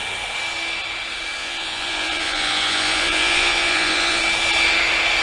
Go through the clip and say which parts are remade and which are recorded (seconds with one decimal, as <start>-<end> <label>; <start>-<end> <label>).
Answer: 0.0-1.4 recorded; 1.4-4.2 remade; 4.2-5.2 recorded